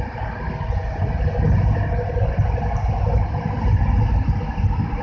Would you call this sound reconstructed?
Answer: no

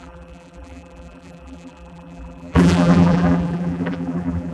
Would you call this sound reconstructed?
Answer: yes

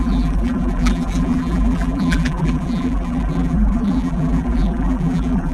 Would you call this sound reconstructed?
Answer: yes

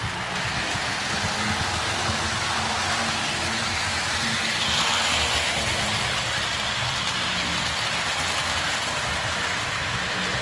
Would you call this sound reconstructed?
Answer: no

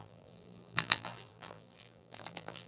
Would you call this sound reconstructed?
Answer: yes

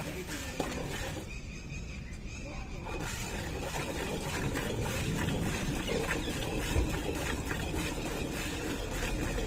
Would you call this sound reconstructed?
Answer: yes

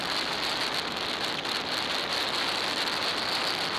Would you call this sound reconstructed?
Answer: no